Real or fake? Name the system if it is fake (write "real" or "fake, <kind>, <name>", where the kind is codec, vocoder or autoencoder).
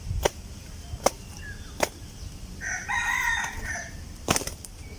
real